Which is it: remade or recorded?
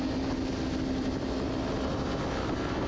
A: recorded